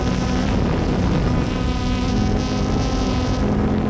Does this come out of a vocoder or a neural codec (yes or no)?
no